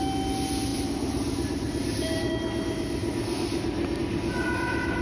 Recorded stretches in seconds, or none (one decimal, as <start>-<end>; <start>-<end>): 0.0-0.7; 2.3-5.0